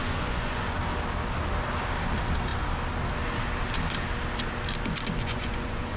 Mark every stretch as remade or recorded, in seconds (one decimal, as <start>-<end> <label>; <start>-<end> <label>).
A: 0.0-0.8 remade; 0.8-5.2 recorded; 5.2-6.0 remade